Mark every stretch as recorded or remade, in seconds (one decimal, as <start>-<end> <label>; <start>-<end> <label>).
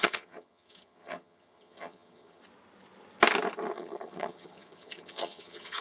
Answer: 0.0-2.4 remade; 2.4-3.7 recorded; 3.7-5.8 remade